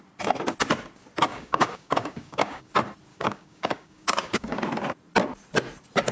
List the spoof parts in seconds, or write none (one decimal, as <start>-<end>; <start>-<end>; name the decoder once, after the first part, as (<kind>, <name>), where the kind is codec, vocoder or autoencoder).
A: 1.3-2.7 (codec, DAC); 3.1-4.6